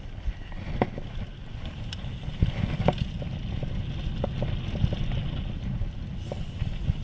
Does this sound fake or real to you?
real